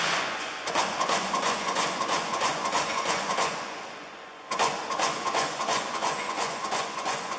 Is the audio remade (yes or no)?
yes